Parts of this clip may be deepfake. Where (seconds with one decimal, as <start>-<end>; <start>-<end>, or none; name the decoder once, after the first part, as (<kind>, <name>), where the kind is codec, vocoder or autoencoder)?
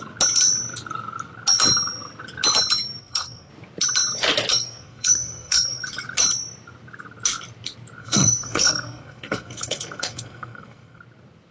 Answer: 3.0-3.5 (codec, SNAC); 4.5-5.8; 8.0-11.0